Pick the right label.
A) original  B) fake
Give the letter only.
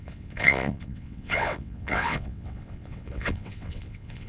B